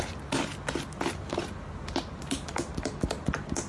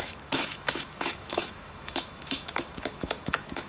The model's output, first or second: second